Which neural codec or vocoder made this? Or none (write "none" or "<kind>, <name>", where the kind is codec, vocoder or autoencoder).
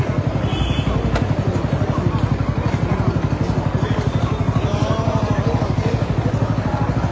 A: none